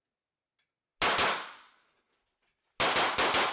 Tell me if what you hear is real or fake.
real